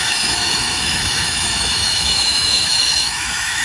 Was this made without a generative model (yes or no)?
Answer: no